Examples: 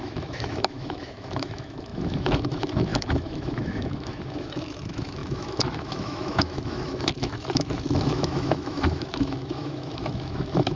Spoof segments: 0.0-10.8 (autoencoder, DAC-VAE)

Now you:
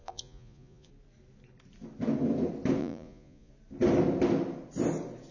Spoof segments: 0.0-0.9 (vocoder, Vocos); 2.8-3.5

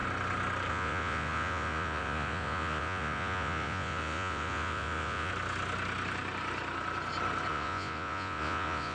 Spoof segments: 0.7-5.3 (vocoder, Vocos); 7.5-8.9

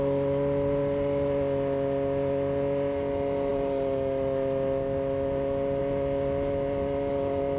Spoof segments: none

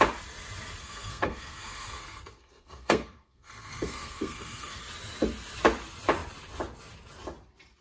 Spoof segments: 0.8-4.8 (codec, SNAC)